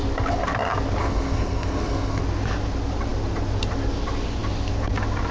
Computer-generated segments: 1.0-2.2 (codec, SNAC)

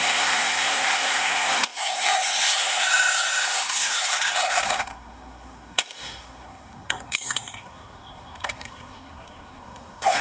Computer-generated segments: 0.0-10.2 (codec, SNAC)

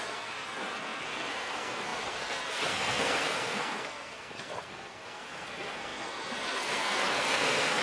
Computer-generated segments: 0.0-7.8 (codec, SNAC)

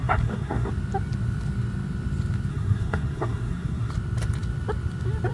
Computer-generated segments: 0.0-0.7 (codec, SNAC); 2.5-3.9

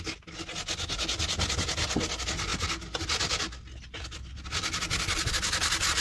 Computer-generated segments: none

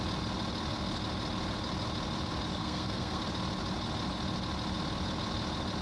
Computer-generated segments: 2.6-3.2 (codec, SNAC)

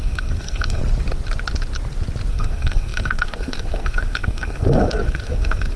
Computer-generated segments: 0.0-0.8 (codec, SNAC); 2.3-5.8

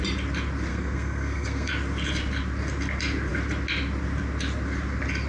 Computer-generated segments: 0.7-1.7 (codec, SNAC)